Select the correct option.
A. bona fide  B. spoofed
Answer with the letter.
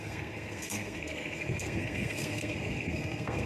B